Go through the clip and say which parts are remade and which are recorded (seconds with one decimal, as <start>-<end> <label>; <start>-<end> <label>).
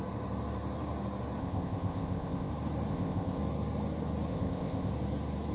0.0-1.4 recorded; 1.4-2.5 remade; 2.5-2.9 recorded; 2.9-3.4 remade; 3.4-4.3 recorded; 4.3-4.9 remade; 4.9-5.5 recorded